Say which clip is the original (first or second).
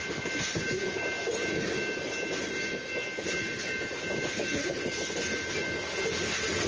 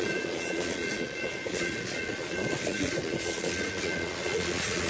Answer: first